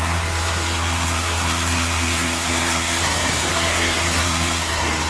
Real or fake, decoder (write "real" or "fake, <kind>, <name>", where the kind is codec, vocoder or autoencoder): fake, codec, SNAC